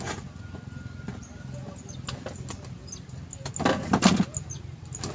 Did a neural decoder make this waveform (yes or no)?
no